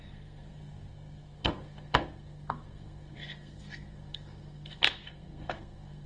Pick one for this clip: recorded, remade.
remade